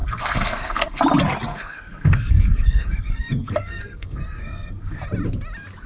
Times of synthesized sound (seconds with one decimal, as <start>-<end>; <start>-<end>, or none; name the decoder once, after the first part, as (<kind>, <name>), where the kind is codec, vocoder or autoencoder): 0.0-1.0 (codec, SNAC); 1.5-5.0

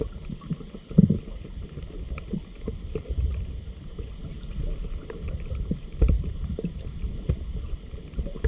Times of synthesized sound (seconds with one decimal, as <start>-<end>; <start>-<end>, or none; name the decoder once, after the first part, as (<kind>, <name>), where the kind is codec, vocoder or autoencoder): 5.0-6.3 (vocoder, BigVGAN v2)

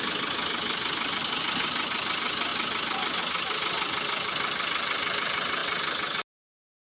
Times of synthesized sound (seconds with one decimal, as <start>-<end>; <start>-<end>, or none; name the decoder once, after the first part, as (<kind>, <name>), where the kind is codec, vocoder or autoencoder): 1.2-2.0 (vocoder, BigVGAN v2)